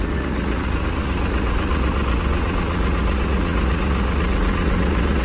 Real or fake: fake